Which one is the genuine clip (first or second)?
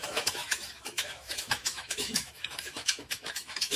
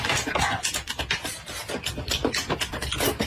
second